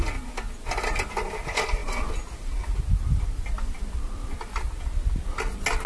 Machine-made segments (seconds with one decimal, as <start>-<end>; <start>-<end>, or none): none